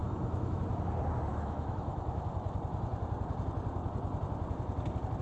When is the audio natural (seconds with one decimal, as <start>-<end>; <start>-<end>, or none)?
0.6-1.3; 2.2-5.2